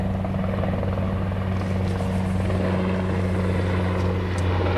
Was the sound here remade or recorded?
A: recorded